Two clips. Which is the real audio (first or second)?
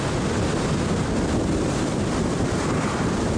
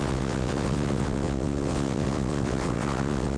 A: first